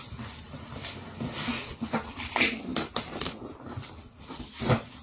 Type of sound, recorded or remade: recorded